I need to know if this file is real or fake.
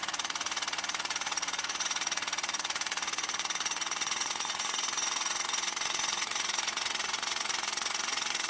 fake